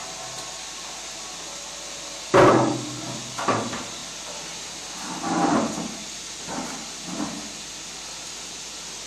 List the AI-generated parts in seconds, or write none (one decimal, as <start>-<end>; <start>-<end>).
none